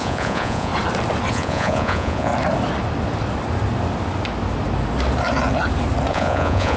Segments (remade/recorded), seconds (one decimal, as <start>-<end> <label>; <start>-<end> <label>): 0.0-0.7 remade; 0.7-1.3 recorded; 1.3-2.3 remade; 2.3-6.1 recorded; 6.1-6.8 remade